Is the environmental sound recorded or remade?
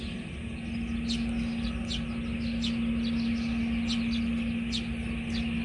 recorded